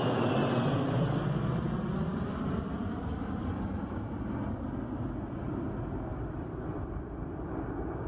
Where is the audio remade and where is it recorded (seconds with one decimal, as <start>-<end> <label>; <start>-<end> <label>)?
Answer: 0.0-6.1 recorded; 6.1-7.4 remade; 7.4-8.1 recorded